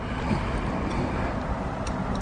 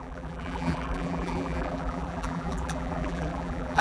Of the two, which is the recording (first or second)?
first